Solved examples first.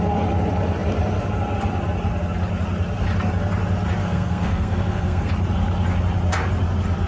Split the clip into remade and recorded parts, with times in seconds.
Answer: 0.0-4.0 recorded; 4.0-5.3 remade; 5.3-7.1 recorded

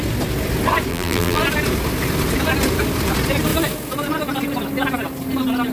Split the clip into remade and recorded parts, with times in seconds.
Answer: 0.0-0.9 recorded; 0.9-1.4 remade; 1.4-5.7 recorded

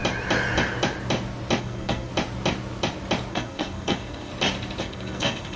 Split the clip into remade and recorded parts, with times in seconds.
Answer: 0.0-1.6 recorded; 1.6-2.1 remade; 2.1-3.3 recorded; 3.3-4.3 remade; 4.3-4.8 recorded; 4.8-5.6 remade

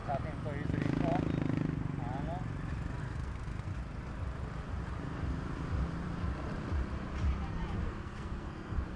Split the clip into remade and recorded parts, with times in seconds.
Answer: 0.0-3.0 recorded; 3.0-3.7 remade; 3.7-7.8 recorded; 7.8-9.0 remade

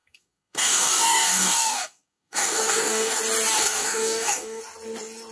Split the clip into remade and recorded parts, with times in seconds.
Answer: 0.0-3.2 remade; 3.2-3.6 recorded; 3.6-4.6 remade; 4.6-5.3 recorded

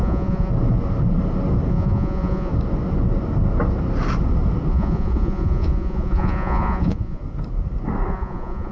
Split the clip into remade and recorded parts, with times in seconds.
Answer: 0.0-0.5 remade; 0.5-1.7 recorded; 1.7-2.5 remade; 2.5-4.7 recorded; 4.7-7.2 remade; 7.2-8.1 recorded; 8.1-8.7 remade

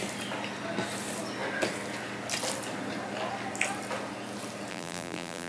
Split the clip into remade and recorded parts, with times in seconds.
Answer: 0.0-4.7 recorded; 4.7-5.5 remade